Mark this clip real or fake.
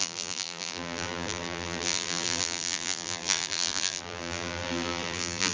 fake